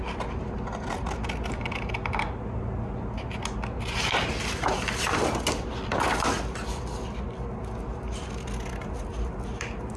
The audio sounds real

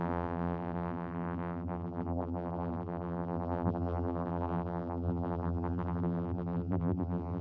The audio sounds fake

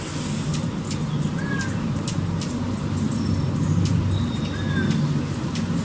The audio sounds real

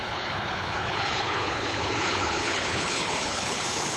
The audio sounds fake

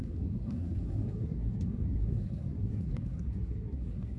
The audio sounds fake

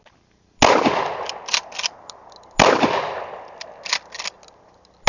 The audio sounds real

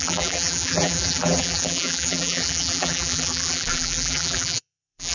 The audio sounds fake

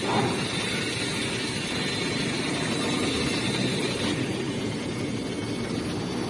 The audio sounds real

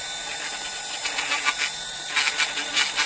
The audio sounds real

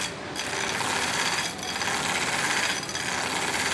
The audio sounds real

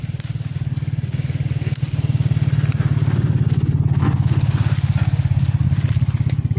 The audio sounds real